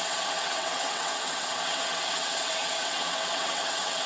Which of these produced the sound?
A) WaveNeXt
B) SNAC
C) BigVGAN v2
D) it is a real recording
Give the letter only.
A